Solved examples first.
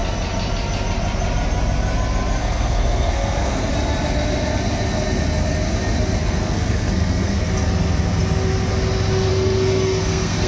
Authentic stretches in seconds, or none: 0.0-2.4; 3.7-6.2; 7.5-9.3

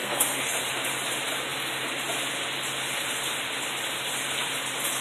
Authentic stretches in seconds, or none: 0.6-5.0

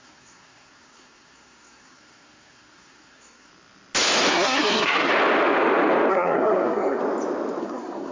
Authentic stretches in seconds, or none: 3.5-4.3; 5.1-6.1; 7.0-7.6